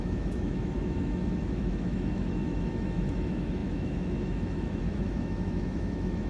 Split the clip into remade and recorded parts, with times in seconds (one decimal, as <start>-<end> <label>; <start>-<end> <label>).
0.0-6.3 remade